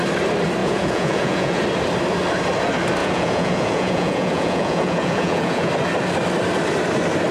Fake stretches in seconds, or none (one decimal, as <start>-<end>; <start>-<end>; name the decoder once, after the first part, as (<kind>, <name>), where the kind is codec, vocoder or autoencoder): 0.6-1.6 (vocoder, Vocos); 3.0-5.7